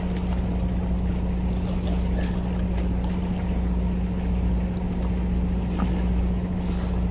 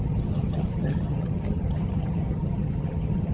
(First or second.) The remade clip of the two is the second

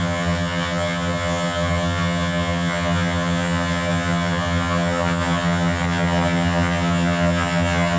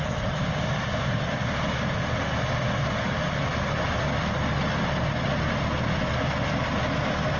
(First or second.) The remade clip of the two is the first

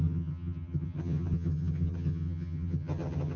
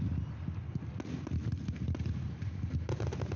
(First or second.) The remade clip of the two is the first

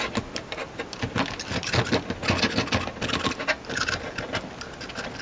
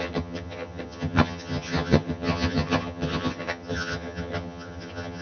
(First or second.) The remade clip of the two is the second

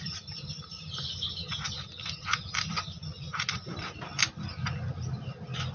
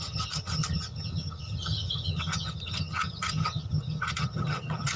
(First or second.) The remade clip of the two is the second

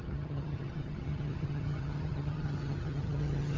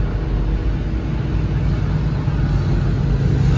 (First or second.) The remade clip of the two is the first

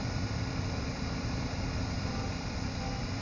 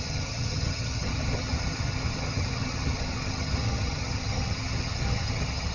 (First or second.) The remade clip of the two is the second